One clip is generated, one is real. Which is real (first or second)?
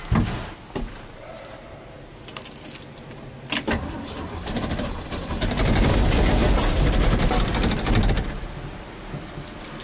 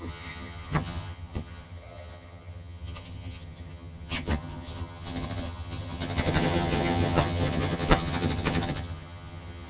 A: first